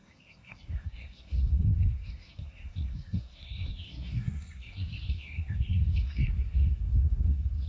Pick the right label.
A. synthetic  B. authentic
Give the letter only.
A